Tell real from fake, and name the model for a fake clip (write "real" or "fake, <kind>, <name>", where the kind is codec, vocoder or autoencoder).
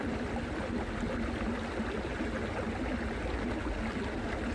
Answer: real